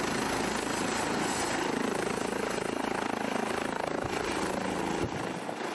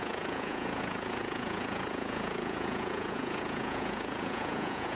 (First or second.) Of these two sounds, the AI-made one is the second